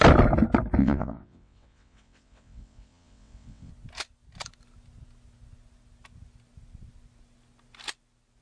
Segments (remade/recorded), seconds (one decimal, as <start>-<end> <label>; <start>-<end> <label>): 0.0-0.8 recorded; 0.8-3.7 remade; 3.7-8.4 recorded